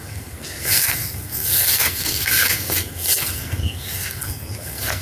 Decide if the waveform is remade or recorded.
remade